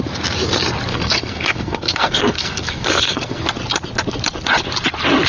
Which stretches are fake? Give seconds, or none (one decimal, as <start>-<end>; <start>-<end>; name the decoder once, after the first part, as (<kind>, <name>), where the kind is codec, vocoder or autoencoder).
0.9-3.4 (codec, SNAC)